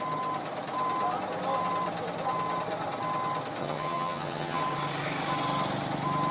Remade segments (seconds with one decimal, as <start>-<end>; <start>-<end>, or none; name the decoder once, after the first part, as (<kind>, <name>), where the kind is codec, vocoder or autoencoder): 3.6-4.6 (vocoder, HiFi-GAN)